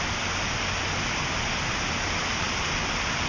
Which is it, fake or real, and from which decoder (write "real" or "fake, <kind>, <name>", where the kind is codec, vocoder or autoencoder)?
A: real